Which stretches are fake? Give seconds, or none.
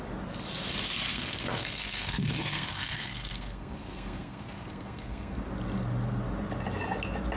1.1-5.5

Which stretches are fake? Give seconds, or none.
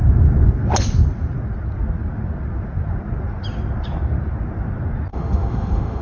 5.1-6.0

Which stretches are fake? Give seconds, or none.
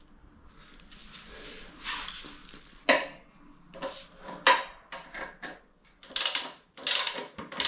none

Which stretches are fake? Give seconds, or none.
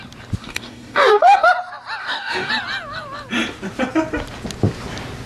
0.4-1.5; 2.0-2.5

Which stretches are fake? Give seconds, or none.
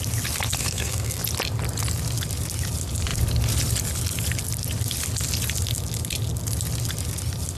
0.6-1.2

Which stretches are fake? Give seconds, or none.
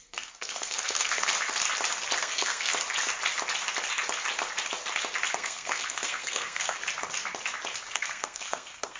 0.0-1.3; 2.2-2.7; 5.3-6.8; 7.9-9.0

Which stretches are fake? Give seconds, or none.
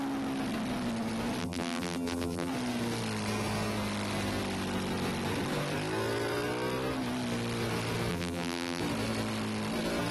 1.4-2.5; 8.1-8.8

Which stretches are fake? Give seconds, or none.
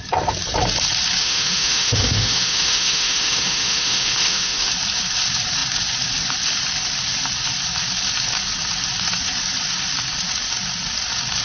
1.2-4.7